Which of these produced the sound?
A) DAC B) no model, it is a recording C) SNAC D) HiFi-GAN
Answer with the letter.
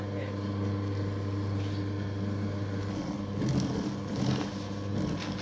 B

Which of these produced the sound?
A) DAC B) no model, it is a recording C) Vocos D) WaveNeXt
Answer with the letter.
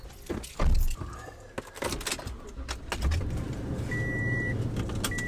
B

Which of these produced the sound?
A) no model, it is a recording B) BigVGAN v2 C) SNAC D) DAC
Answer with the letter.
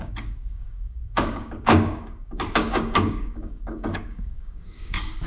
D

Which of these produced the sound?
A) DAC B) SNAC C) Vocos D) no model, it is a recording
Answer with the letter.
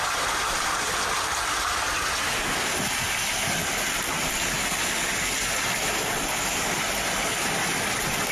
D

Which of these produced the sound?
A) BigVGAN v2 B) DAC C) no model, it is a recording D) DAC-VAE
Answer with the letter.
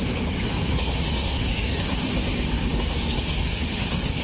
B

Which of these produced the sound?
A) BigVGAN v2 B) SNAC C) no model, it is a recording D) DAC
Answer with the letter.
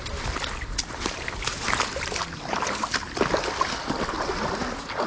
C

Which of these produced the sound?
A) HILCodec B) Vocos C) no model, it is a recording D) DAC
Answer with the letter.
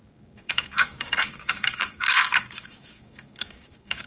D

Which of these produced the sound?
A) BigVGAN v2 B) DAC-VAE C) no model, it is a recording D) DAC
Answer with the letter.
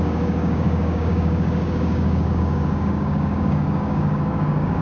D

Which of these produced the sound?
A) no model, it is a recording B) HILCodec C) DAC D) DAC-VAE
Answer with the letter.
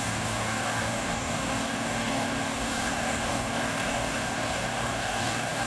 C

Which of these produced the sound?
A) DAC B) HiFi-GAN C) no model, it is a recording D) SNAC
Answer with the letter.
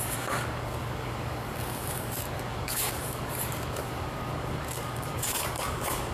A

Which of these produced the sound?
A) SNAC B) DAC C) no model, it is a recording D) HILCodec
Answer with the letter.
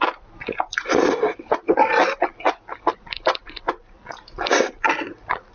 C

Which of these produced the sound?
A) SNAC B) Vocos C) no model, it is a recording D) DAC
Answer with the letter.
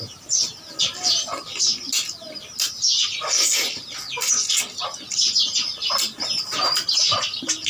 C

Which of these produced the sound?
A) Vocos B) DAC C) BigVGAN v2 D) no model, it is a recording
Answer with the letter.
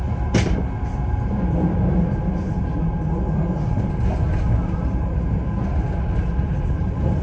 D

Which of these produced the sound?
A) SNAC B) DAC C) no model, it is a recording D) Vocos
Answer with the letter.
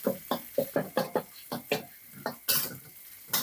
C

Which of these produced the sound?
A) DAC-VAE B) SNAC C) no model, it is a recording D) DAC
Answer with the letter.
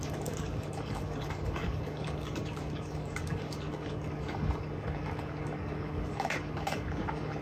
D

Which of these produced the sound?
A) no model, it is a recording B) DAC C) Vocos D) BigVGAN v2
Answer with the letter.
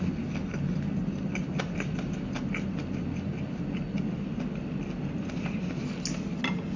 A